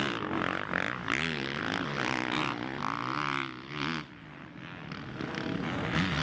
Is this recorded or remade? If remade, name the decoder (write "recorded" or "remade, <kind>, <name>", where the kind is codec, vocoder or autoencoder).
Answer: recorded